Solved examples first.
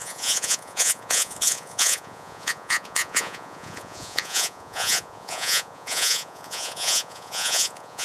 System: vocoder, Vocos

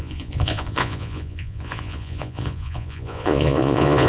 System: vocoder, Vocos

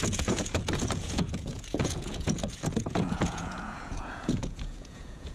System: vocoder, Vocos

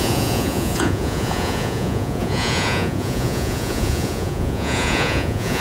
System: vocoder, Vocos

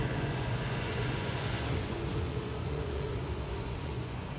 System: vocoder, Vocos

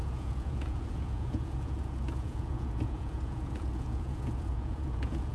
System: vocoder, Vocos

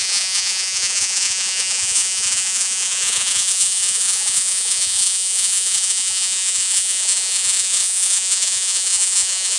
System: vocoder, Vocos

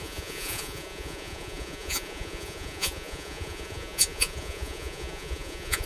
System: vocoder, Vocos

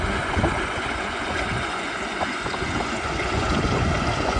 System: vocoder, Vocos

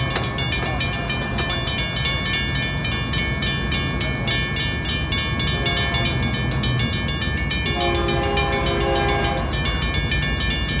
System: none